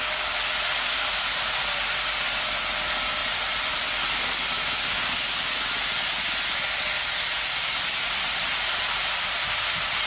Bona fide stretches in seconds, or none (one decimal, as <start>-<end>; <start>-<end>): 0.0-3.2; 4.5-10.1